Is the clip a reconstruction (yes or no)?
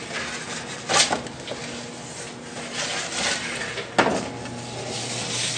no